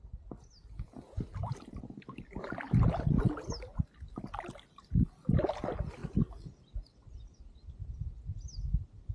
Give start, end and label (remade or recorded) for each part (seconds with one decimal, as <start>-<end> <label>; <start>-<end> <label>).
0.0-9.1 recorded